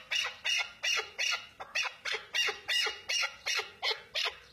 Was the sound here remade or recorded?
recorded